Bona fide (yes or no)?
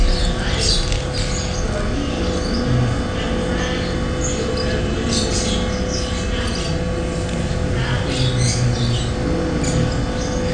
yes